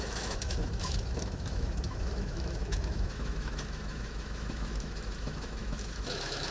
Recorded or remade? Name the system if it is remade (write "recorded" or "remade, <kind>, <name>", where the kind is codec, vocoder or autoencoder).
remade, autoencoder, DAC-VAE